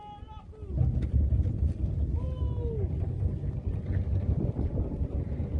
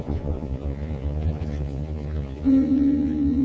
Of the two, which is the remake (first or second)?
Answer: second